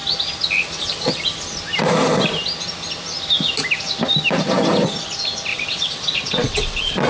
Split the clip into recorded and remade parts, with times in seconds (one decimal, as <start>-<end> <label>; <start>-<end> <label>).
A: 0.0-5.5 recorded; 5.5-7.1 remade